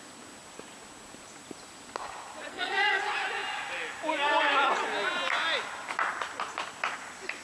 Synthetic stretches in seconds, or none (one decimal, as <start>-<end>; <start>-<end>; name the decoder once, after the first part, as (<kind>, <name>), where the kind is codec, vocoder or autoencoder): 2.5-3.0 (codec, SNAC)